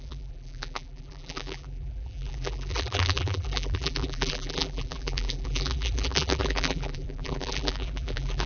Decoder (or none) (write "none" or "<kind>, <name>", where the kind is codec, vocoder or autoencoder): vocoder, BigVGAN v2